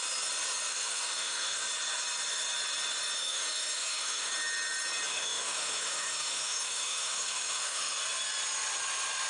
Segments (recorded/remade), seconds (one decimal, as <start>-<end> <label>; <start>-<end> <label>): 0.0-0.7 recorded; 0.7-1.6 remade; 1.6-3.2 recorded; 3.2-4.3 remade; 4.3-5.1 recorded; 5.1-8.0 remade; 8.0-9.3 recorded